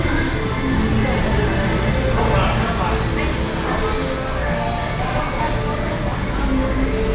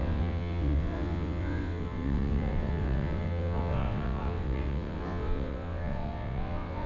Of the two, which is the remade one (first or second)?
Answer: second